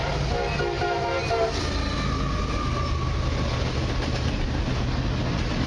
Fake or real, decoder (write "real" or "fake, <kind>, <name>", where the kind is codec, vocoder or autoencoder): real